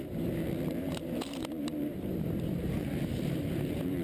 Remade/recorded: remade